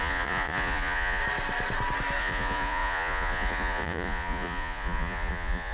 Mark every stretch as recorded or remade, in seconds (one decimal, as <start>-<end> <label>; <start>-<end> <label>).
0.0-1.2 remade; 1.2-2.2 recorded; 2.2-5.7 remade